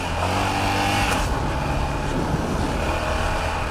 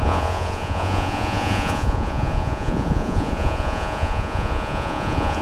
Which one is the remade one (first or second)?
second